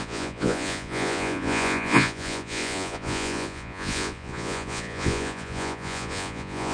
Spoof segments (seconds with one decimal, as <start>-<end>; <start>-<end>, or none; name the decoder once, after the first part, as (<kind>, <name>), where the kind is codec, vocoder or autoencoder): 0.0-6.7 (vocoder, Vocos)